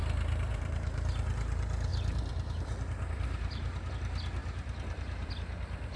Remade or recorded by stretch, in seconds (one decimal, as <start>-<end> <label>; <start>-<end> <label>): 0.0-0.5 recorded; 0.5-1.1 remade; 1.1-1.9 recorded; 1.9-3.9 remade; 3.9-4.4 recorded; 4.4-5.3 remade; 5.3-6.0 recorded